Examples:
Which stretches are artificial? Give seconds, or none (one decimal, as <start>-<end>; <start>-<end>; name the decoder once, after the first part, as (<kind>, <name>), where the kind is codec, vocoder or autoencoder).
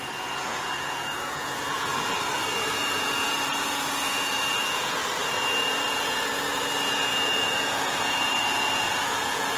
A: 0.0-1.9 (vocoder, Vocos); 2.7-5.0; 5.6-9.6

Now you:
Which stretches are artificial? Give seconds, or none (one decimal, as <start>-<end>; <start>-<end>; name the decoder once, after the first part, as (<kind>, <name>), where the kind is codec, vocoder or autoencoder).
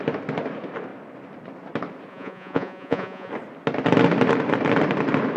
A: 2.1-3.3 (vocoder, Vocos)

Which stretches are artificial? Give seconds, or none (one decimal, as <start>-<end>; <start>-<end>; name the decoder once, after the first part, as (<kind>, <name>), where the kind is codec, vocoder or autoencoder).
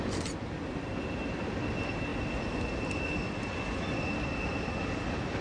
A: none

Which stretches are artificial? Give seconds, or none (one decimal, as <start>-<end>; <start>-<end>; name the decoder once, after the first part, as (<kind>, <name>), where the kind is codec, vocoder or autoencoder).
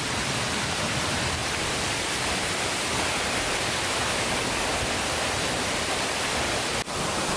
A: none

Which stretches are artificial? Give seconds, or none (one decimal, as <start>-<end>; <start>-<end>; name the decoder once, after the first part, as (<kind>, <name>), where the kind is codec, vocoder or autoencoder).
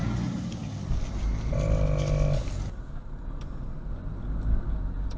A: none